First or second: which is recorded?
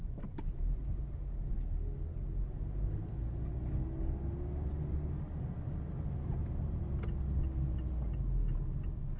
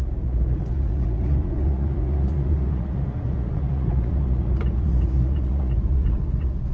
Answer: first